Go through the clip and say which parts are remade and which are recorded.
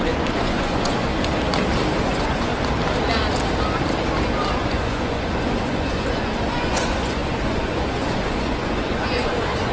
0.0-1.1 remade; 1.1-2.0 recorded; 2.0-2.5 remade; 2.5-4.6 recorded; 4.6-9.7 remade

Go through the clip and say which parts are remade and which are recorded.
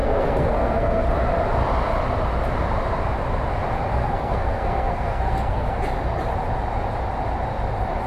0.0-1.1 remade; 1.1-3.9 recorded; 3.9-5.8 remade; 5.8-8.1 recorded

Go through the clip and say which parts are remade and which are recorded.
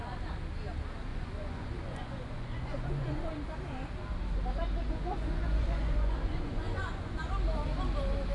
0.0-1.1 recorded; 1.1-3.3 remade; 3.3-4.8 recorded; 4.8-7.3 remade; 7.3-8.3 recorded